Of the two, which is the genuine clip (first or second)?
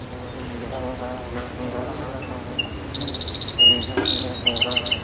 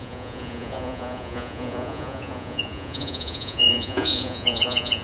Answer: first